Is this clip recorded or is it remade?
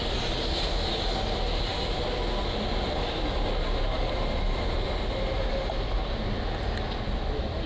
recorded